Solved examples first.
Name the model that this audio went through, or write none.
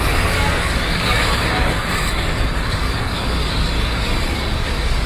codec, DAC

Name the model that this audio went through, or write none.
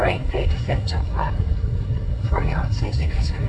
codec, SNAC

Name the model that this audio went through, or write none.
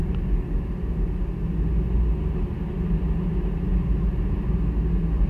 none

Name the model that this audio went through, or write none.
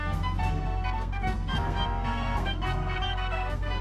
codec, SNAC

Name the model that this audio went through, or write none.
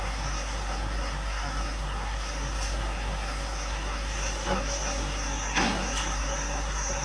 codec, SNAC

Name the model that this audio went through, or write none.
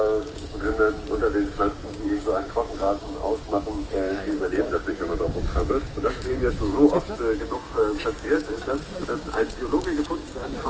codec, DAC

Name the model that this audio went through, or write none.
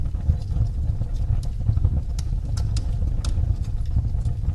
none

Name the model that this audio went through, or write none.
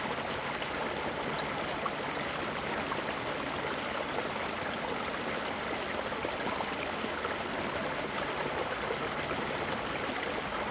none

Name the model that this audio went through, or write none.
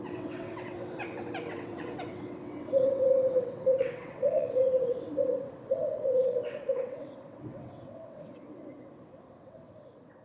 vocoder, WaveNeXt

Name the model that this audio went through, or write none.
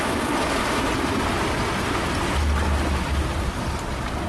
none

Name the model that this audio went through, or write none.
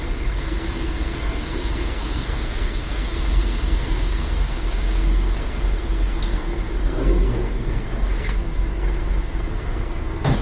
codec, SNAC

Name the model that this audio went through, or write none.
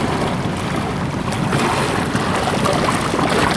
none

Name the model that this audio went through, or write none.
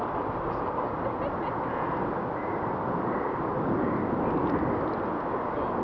none